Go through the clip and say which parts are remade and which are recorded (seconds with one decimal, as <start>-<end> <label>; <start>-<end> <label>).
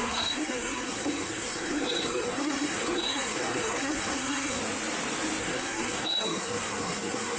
0.0-4.6 remade; 4.6-5.4 recorded; 5.4-7.4 remade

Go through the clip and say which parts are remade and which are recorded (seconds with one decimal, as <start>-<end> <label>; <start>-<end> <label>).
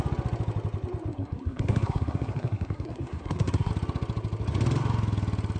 0.0-1.1 recorded; 1.1-3.7 remade; 3.7-5.6 recorded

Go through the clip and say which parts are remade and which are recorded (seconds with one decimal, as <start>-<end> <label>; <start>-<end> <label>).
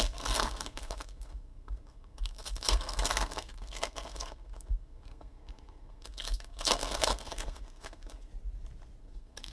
0.0-8.3 remade; 8.3-9.0 recorded; 9.0-9.5 remade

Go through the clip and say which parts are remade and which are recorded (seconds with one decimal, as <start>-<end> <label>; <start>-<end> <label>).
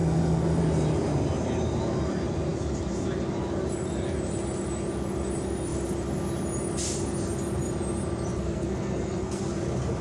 0.0-0.6 remade; 0.6-8.3 recorded; 8.3-9.4 remade; 9.4-10.0 recorded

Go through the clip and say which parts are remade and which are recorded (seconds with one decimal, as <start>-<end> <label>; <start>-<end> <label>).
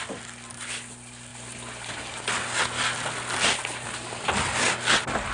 0.0-5.3 recorded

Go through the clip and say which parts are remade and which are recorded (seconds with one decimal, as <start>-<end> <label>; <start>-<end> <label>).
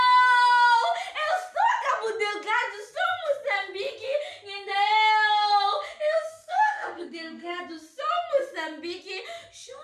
0.0-6.3 recorded; 6.3-7.6 remade; 7.6-9.8 recorded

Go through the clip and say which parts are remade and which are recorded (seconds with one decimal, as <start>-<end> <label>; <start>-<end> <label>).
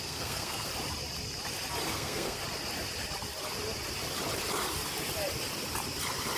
0.0-0.7 remade; 0.7-1.9 recorded; 1.9-2.4 remade; 2.4-6.4 recorded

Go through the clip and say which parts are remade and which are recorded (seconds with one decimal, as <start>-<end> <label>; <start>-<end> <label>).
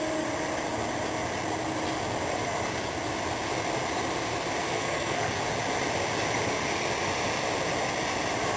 0.0-4.6 recorded; 4.6-5.3 remade; 5.3-8.6 recorded